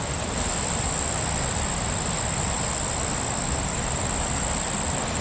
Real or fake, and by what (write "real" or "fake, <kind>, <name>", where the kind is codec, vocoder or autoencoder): real